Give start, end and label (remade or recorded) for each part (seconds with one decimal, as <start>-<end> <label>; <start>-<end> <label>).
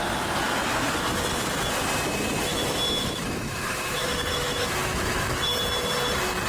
0.0-2.5 recorded; 2.5-5.6 remade; 5.6-6.5 recorded